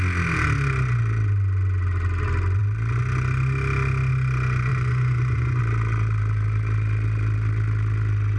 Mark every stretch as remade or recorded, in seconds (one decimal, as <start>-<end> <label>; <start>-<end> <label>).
0.0-4.7 recorded; 4.7-5.6 remade; 5.6-8.4 recorded